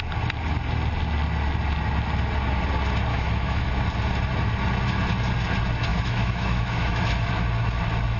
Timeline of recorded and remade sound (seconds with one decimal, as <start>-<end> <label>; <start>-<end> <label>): 0.0-3.1 recorded; 3.1-3.8 remade; 3.8-5.9 recorded; 5.9-7.3 remade; 7.3-8.2 recorded